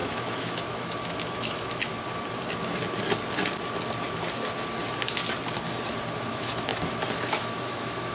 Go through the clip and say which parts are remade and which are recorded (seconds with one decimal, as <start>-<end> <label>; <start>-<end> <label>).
0.0-1.9 remade; 1.9-6.3 recorded; 6.3-6.7 remade; 6.7-7.3 recorded; 7.3-8.1 remade